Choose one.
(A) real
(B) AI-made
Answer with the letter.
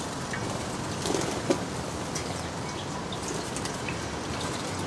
A